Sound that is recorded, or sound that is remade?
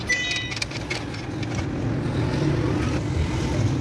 recorded